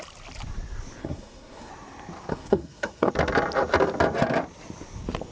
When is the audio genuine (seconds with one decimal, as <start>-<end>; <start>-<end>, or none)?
0.0-1.0; 1.7-2.3; 3.1-5.3